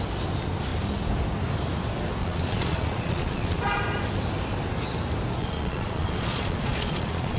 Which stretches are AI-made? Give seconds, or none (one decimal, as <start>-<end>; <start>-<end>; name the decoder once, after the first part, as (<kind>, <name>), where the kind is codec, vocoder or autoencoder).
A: 2.2-3.6 (vocoder, Vocos); 5.4-7.4